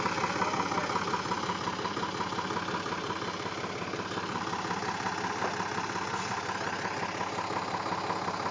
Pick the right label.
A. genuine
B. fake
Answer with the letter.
A